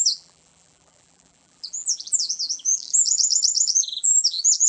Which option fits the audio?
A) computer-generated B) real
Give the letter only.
A